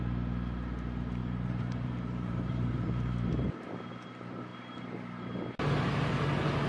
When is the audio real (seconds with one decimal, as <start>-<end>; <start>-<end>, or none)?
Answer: 0.0-1.2; 3.7-6.7